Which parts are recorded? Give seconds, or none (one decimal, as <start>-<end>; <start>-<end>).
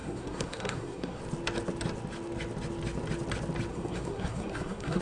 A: 1.2-3.7